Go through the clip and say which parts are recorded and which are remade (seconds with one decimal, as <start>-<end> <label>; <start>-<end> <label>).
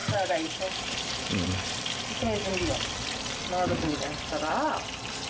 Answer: 0.0-1.7 remade; 1.7-5.3 recorded